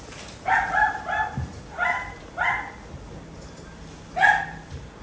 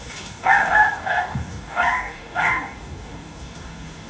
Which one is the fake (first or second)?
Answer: second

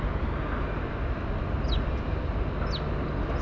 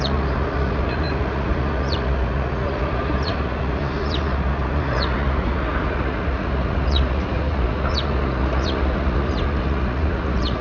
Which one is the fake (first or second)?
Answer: second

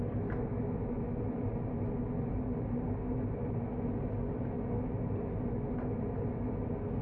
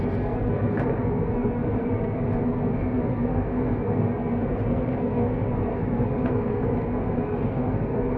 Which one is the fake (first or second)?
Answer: second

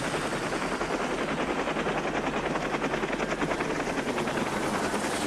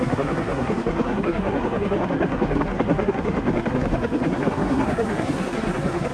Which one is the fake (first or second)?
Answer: second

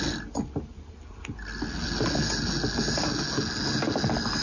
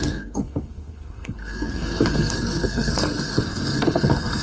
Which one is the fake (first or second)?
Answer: second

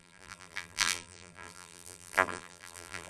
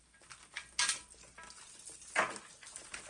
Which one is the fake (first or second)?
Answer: first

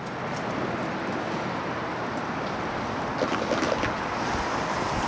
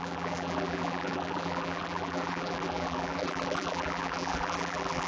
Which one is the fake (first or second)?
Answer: second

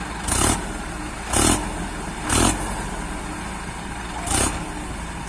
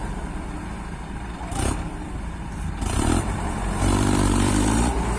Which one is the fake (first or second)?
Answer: second